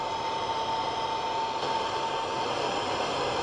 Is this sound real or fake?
real